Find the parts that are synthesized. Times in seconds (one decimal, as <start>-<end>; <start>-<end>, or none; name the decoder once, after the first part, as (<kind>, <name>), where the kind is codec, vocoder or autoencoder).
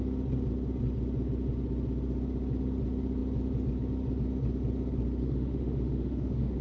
5.2-6.6 (autoencoder, DAC-VAE)